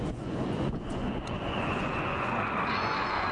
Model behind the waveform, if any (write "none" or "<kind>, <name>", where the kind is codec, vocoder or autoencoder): vocoder, Vocos